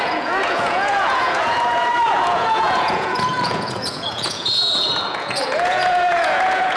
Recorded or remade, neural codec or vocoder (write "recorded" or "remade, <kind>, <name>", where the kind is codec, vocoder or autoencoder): remade, vocoder, Vocos